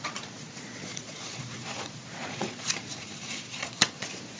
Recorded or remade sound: remade